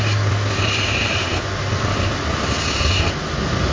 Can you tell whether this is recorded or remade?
recorded